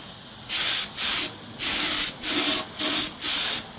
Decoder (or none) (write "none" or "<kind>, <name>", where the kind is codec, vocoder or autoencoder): none